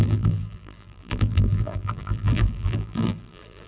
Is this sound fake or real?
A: fake